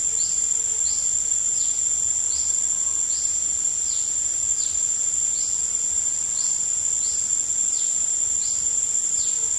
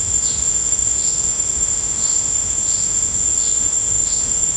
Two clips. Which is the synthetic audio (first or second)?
second